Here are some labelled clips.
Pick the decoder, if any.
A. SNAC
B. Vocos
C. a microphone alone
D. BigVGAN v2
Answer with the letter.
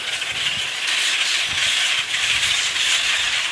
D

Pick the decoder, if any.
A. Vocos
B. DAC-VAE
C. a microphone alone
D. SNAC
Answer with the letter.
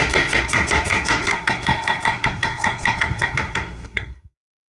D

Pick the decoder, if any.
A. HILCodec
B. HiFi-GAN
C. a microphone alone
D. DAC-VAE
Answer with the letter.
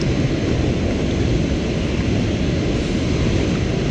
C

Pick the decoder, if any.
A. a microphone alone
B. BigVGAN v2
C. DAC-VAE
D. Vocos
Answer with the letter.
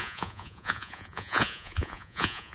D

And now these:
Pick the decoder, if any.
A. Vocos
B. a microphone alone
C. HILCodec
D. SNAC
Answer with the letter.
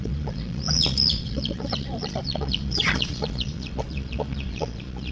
A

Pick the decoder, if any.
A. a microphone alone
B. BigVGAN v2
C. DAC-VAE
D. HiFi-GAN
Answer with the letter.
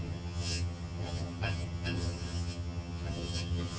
D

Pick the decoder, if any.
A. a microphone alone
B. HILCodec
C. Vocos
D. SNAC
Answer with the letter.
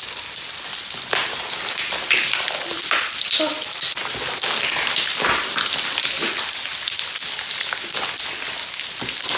A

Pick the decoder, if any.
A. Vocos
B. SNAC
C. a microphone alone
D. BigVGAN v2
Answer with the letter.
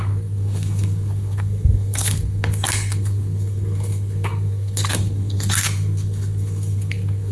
B